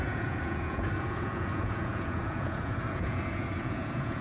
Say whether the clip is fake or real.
fake